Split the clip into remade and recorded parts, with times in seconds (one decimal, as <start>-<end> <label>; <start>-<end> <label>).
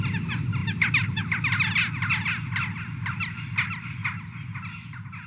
0.0-5.3 recorded